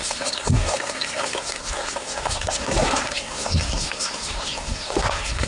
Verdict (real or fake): fake